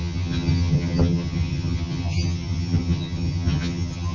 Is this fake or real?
fake